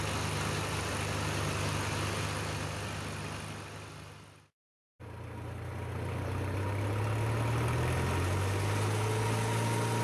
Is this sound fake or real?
real